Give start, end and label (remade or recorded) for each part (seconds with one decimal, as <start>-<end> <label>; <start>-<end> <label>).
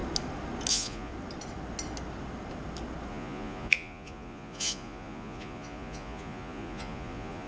0.0-0.7 recorded; 0.7-1.1 remade; 1.1-3.1 recorded; 3.1-7.5 remade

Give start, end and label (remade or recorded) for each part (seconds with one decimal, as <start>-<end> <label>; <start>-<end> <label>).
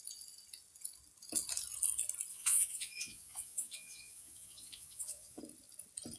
0.0-2.3 recorded; 2.3-5.4 remade; 5.4-6.2 recorded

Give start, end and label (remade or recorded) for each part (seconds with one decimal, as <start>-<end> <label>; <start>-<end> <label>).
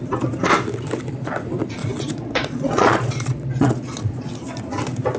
0.0-1.8 recorded; 1.8-4.3 remade; 4.3-5.2 recorded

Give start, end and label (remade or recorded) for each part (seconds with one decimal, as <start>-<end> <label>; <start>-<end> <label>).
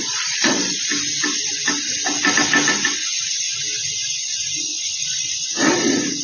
0.0-0.9 remade; 0.9-4.6 recorded; 4.6-6.2 remade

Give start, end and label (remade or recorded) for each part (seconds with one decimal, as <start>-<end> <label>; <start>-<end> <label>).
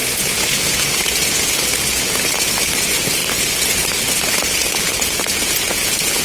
0.0-6.2 remade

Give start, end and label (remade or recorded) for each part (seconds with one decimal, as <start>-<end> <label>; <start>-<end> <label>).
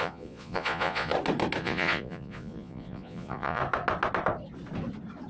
0.0-1.1 remade; 1.1-1.6 recorded; 1.6-3.6 remade; 3.6-5.3 recorded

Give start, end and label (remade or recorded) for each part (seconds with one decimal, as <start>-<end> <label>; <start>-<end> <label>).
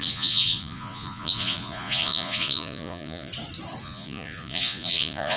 0.0-3.3 remade; 3.3-3.8 recorded; 3.8-5.4 remade